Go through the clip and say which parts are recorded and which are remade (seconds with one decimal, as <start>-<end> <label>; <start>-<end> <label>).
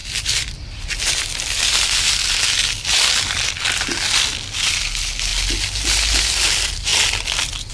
0.0-7.7 recorded